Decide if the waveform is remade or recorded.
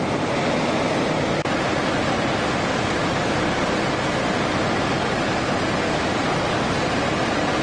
recorded